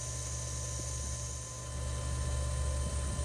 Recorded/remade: recorded